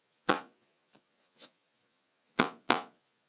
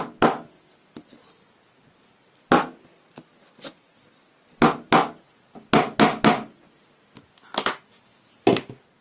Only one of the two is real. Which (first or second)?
second